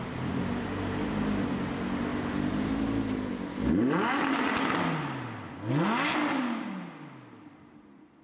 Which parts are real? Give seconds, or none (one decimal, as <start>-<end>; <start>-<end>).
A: 0.0-8.2

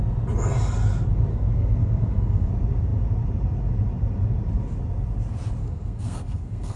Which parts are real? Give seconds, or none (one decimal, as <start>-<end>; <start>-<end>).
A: 0.0-1.3; 2.5-5.6

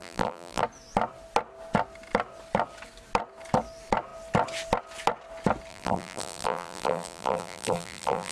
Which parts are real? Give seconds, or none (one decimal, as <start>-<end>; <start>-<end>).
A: 0.6-5.7

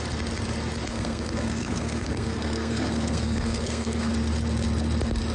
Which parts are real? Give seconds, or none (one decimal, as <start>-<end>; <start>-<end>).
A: 0.0-0.9; 4.1-5.3

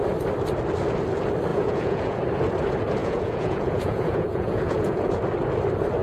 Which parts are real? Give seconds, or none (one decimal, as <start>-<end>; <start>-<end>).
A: 0.0-1.5; 2.2-3.0; 5.2-6.0